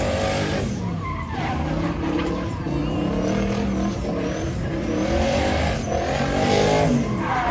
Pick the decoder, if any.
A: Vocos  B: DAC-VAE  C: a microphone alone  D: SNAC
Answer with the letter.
C